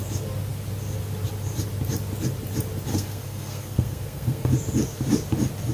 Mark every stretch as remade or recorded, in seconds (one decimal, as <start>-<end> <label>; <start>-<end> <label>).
0.0-2.9 recorded; 2.9-4.5 remade; 4.5-5.7 recorded